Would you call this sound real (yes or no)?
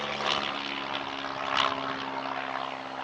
yes